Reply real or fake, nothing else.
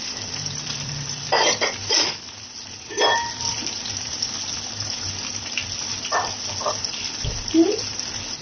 real